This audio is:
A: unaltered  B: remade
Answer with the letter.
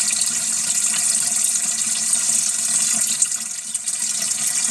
A